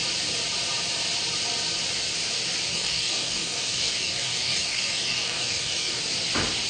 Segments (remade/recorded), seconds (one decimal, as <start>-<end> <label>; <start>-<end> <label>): 0.0-2.7 recorded; 2.7-6.0 remade; 6.0-6.7 recorded